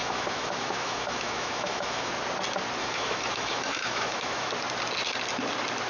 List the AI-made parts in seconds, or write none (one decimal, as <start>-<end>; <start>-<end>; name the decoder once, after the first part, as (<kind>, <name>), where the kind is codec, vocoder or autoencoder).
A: 0.0-2.1 (autoencoder, DAC-VAE); 2.8-4.5